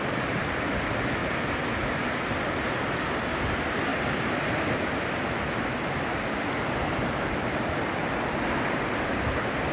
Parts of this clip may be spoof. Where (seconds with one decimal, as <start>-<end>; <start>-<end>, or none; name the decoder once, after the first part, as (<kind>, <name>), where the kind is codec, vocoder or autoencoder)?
none